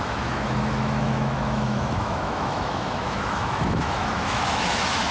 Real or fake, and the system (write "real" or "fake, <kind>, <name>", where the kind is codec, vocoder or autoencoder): fake, autoencoder, DAC-VAE